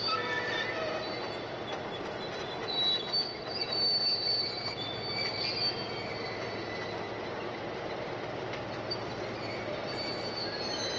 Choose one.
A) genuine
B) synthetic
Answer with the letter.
A